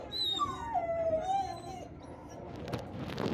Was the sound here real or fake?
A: real